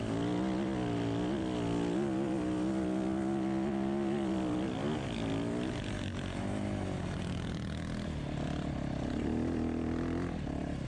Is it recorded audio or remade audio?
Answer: recorded